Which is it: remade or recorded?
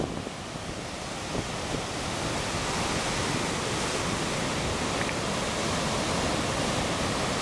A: recorded